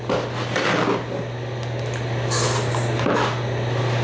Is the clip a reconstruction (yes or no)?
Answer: no